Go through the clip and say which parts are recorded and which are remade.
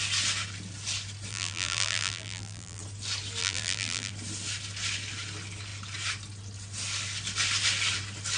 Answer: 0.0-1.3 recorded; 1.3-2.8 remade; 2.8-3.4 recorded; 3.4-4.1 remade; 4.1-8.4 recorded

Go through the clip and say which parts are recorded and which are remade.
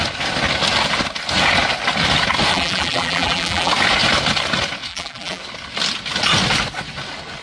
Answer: 0.0-2.5 recorded; 2.5-3.7 remade; 3.7-4.9 recorded; 4.9-5.4 remade; 5.4-7.4 recorded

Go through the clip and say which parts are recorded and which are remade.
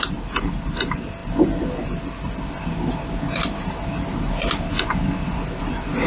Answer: 0.0-6.1 recorded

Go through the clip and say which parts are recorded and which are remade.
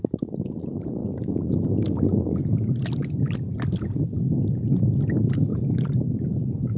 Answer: 0.0-1.0 remade; 1.0-5.1 recorded; 5.1-6.8 remade